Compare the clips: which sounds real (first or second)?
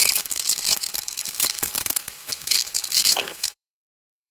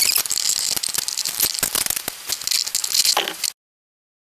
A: second